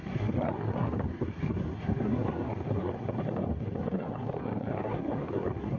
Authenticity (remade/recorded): remade